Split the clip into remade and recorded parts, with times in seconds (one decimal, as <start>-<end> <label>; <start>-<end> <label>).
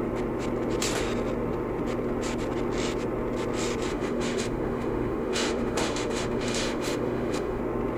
0.0-3.9 recorded; 3.9-7.6 remade; 7.6-8.0 recorded